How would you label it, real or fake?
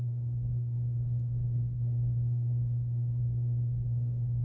fake